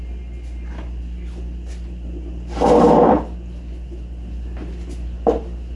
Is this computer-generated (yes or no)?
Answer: no